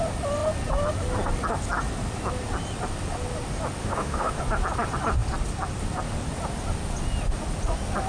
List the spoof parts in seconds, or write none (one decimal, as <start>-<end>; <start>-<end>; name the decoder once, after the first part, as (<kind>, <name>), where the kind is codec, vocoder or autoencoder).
3.8-4.4 (autoencoder, DAC-VAE)